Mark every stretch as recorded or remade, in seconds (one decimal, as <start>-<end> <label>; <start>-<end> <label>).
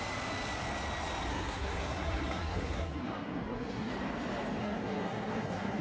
0.0-1.3 recorded; 1.3-3.9 remade; 3.9-4.6 recorded; 4.6-5.8 remade